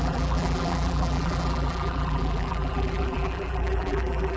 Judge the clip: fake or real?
fake